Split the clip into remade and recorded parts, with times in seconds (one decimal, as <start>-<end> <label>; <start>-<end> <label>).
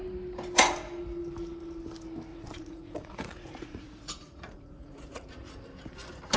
0.0-2.3 recorded; 2.3-5.6 remade; 5.6-6.4 recorded